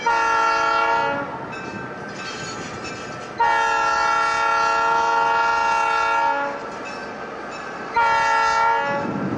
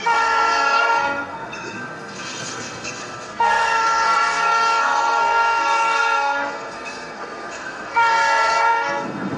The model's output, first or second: second